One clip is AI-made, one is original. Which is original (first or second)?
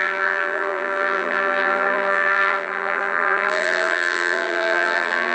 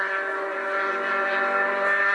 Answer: second